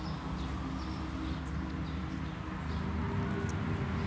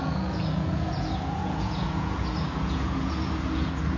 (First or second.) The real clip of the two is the first